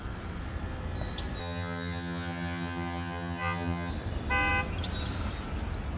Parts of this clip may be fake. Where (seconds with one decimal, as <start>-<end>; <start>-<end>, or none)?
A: 1.4-3.9